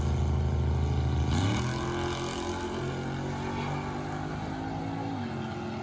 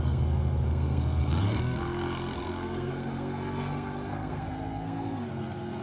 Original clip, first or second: first